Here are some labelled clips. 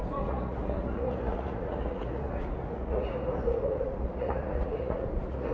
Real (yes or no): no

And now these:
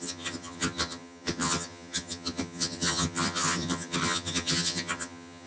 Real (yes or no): no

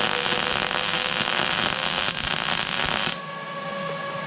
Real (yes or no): yes